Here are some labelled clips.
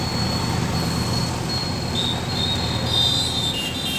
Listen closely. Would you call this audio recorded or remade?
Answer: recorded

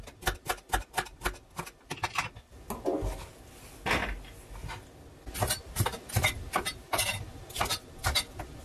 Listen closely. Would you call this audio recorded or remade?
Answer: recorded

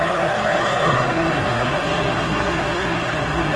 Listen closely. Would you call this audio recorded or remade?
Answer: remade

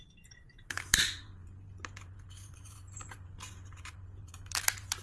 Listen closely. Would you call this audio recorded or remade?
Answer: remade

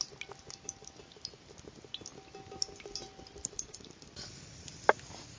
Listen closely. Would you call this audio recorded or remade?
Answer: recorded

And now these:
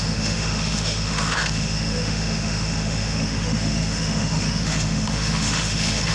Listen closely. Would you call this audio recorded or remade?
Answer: remade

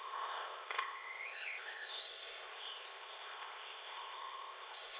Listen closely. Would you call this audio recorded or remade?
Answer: remade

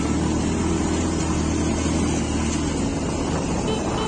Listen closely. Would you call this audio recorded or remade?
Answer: recorded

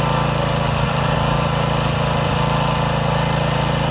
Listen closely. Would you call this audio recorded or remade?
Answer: recorded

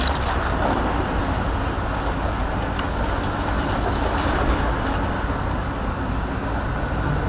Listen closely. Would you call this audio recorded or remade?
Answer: recorded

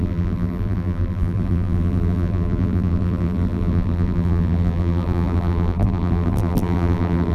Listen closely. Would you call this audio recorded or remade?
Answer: remade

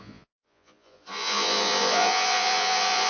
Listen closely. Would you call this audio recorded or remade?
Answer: remade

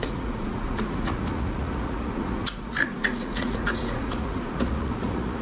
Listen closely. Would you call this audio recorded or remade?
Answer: remade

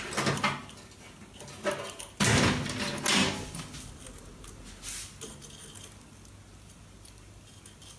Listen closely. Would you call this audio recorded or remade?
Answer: recorded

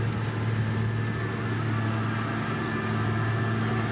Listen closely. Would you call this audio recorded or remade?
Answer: recorded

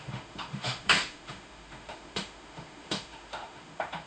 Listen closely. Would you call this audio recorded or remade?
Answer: remade